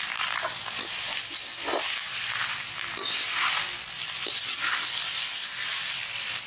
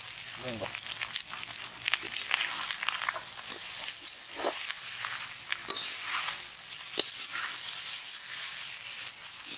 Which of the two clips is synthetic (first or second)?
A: first